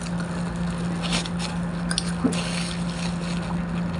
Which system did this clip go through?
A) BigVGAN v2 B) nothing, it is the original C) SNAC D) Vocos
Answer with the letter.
B